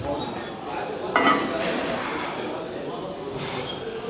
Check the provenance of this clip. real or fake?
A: real